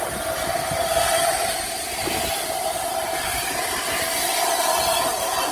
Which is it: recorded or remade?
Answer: recorded